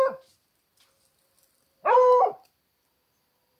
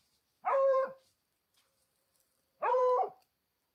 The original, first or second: first